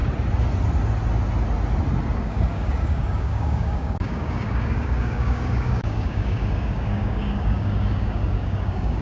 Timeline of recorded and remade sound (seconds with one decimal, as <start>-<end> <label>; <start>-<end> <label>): 0.0-2.2 recorded; 2.2-9.0 remade

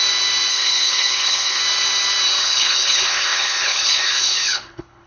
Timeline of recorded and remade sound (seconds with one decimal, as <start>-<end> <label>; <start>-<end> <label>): 0.0-0.5 recorded; 0.5-1.6 remade; 1.6-2.4 recorded; 2.4-5.1 remade

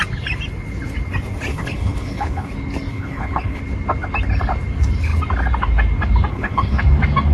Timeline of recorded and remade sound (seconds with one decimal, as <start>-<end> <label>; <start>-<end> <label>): 0.0-1.5 recorded; 1.5-2.5 remade; 2.5-2.9 recorded; 2.9-3.6 remade; 3.6-6.3 recorded; 6.3-6.8 remade; 6.8-7.3 recorded

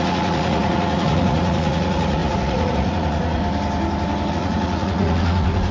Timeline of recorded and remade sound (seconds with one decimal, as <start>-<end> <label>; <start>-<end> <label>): 0.0-3.4 remade; 3.4-4.3 recorded; 4.3-5.7 remade

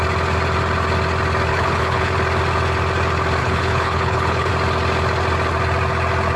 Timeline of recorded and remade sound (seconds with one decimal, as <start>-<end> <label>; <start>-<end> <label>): 0.0-1.5 recorded; 1.5-2.1 remade; 2.1-3.4 recorded; 3.4-4.5 remade; 4.5-6.4 recorded

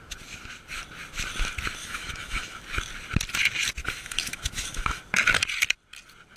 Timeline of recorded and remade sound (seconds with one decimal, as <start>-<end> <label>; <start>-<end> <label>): 0.0-1.8 recorded; 1.8-2.6 remade; 2.6-3.8 recorded; 3.8-5.0 remade; 5.0-6.4 recorded

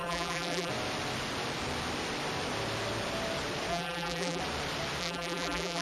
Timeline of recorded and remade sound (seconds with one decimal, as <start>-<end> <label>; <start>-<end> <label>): 0.0-0.7 remade; 0.7-3.7 recorded; 3.7-4.4 remade; 4.4-5.0 recorded; 5.0-5.8 remade

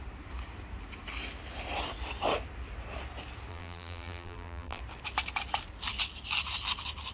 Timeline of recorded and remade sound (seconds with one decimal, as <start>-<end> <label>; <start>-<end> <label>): 0.0-3.5 recorded; 3.5-4.8 remade; 4.8-7.1 recorded